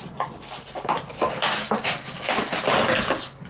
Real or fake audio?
real